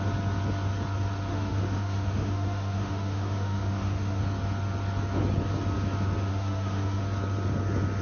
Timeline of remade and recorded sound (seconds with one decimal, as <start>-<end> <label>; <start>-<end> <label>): 0.0-1.3 recorded; 1.3-4.2 remade; 4.2-6.3 recorded; 6.3-7.0 remade; 7.0-8.0 recorded